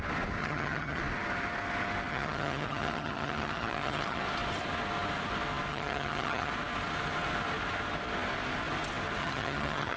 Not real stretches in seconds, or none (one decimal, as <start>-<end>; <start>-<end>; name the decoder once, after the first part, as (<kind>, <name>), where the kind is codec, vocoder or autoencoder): 0.4-1.0 (vocoder, HiFi-GAN); 2.1-4.2; 5.7-6.5; 9.2-10.0